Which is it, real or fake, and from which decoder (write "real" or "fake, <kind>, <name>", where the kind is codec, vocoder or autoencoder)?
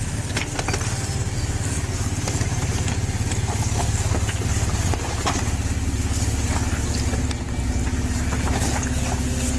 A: real